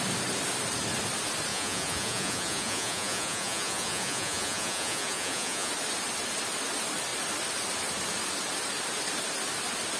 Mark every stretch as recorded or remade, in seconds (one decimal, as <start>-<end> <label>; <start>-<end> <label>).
0.0-1.5 recorded; 1.5-5.7 remade; 5.7-10.0 recorded